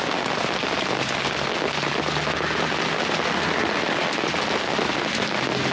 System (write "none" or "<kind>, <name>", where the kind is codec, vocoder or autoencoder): none